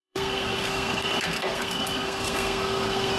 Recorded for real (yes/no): no